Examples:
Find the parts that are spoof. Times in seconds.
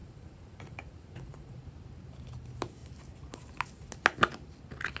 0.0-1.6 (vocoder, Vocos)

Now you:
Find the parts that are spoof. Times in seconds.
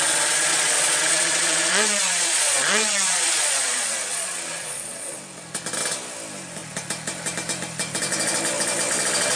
0.5-5.2 (vocoder, Vocos)